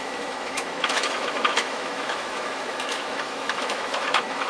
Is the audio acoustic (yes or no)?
no